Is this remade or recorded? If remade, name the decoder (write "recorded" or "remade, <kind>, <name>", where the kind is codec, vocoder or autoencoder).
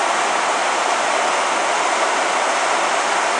recorded